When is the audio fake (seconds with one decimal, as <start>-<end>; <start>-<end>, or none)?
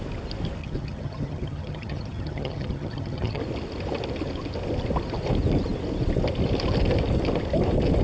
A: 0.6-3.4